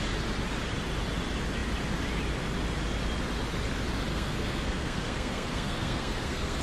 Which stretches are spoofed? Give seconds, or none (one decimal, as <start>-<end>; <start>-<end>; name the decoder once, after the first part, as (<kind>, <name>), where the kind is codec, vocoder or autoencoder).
4.1-6.6 (codec, SNAC)